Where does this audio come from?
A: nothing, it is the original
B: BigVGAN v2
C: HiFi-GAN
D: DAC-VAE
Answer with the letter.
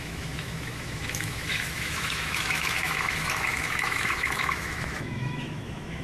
D